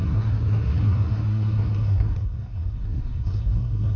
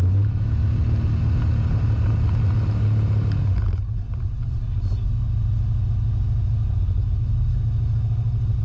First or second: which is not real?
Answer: first